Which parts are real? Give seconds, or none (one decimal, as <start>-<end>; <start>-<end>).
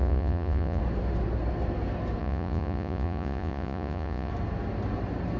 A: 0.8-2.2; 4.3-5.4